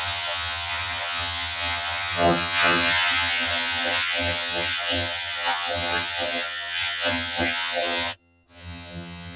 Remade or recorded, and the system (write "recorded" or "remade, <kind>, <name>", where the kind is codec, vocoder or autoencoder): remade, vocoder, HiFi-GAN